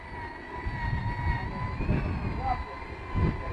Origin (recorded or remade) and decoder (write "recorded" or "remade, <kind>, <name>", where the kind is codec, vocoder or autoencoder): recorded